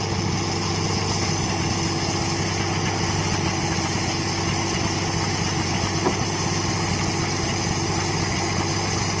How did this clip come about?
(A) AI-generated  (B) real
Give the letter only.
B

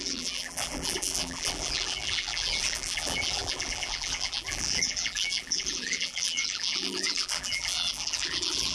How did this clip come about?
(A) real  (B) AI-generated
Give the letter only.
B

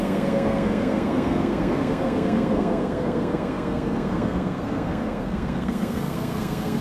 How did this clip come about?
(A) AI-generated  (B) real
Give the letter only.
A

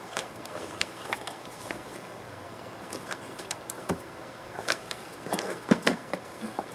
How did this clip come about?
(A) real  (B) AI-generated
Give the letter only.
B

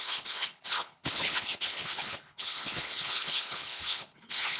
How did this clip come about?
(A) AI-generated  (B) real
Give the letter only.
A